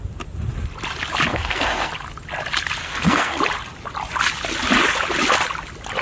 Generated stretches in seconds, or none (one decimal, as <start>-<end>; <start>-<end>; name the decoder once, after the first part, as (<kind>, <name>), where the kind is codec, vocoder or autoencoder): 1.3-1.9 (codec, SNAC); 2.8-3.4